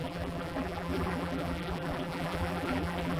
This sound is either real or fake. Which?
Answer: fake